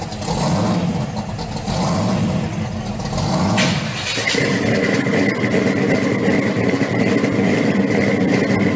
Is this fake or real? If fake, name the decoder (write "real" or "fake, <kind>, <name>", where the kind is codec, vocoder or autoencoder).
real